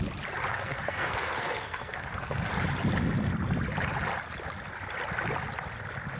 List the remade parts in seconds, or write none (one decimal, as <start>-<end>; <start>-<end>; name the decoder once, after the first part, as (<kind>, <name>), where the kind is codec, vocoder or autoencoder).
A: 0.5-2.5 (codec, SNAC)